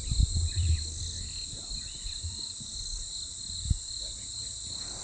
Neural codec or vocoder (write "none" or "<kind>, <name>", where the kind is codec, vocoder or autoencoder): none